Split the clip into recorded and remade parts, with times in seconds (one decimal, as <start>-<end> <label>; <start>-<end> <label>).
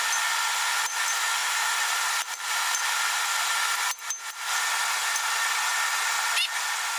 0.0-1.4 recorded; 1.4-3.0 remade; 3.0-7.0 recorded